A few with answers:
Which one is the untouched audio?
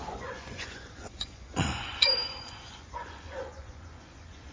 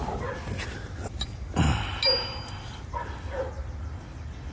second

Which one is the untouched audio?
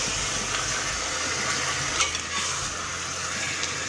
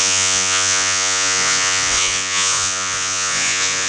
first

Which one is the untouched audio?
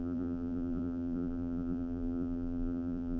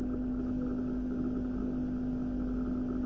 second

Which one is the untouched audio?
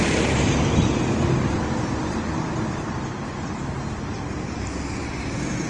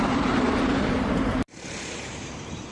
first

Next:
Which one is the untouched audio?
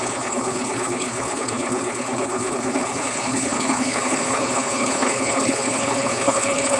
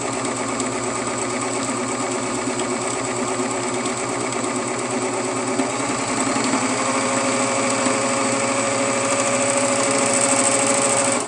second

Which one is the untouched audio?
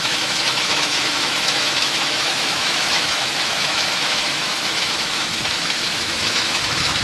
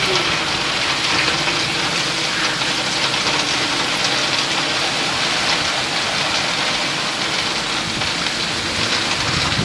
second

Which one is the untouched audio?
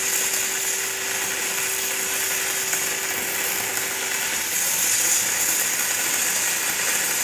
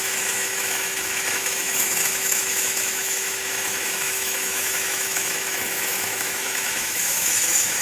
first